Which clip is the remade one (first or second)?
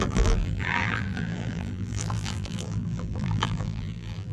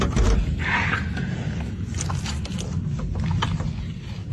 first